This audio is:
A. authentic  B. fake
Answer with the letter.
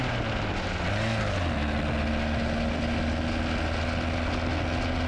A